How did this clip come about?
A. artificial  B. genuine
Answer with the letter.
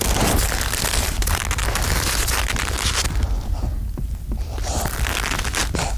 B